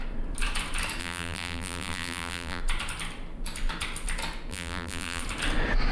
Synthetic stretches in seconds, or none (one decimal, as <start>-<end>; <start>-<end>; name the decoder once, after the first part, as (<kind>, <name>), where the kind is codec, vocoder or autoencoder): 1.0-2.6 (vocoder, BigVGAN v2); 4.5-5.2